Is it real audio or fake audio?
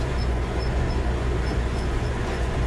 fake